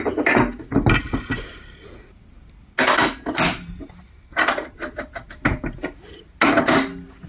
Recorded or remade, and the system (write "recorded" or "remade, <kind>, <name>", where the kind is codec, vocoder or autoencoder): recorded